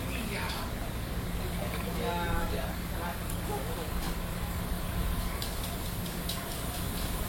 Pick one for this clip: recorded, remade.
remade